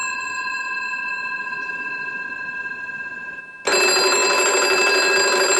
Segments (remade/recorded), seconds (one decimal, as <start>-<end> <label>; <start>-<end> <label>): 0.0-3.4 remade; 3.4-5.6 recorded